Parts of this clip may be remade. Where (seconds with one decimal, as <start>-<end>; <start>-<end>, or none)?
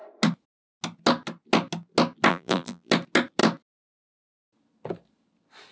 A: 2.3-2.9